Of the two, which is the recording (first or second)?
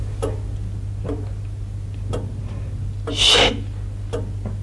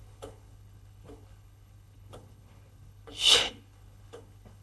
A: first